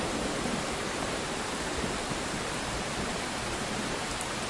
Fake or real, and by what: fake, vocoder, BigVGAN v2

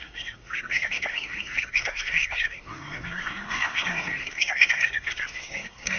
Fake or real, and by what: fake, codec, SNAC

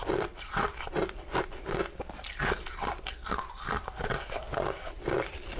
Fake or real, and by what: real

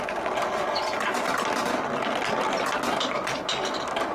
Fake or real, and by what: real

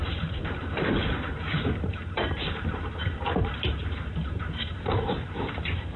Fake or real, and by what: fake, vocoder, BigVGAN v2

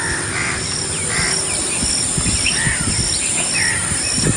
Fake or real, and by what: real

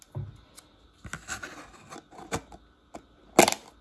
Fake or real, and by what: real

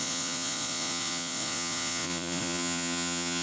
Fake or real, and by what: fake, vocoder, Vocos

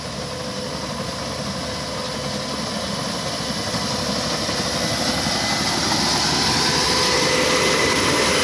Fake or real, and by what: real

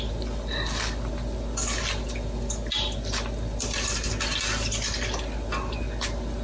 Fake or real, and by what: real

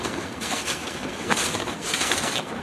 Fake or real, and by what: fake, codec, SNAC